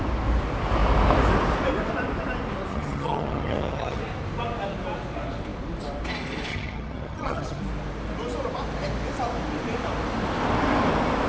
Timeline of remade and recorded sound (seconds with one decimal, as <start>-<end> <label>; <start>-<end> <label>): 0.0-2.7 recorded; 2.7-4.0 remade; 4.0-6.5 recorded; 6.5-7.6 remade; 7.6-11.3 recorded